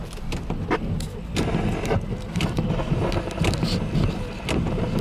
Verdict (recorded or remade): recorded